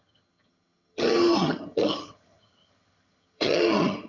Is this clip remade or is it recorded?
remade